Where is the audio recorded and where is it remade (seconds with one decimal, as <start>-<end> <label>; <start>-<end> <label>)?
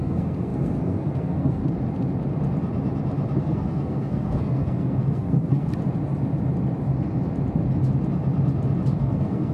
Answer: 0.0-1.6 remade; 1.6-3.4 recorded; 3.4-5.7 remade; 5.7-9.0 recorded; 9.0-9.5 remade